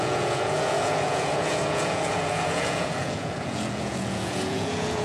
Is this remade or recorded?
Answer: remade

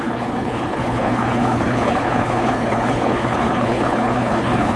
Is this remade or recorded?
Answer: remade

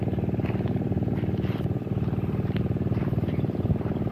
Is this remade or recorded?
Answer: recorded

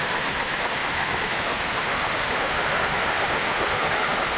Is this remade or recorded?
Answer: remade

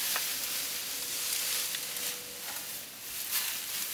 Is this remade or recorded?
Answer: recorded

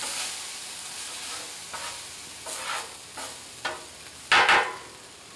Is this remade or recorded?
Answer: recorded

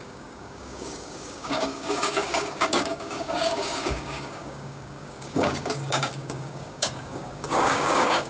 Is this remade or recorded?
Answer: remade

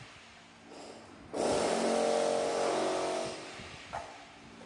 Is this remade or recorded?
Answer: recorded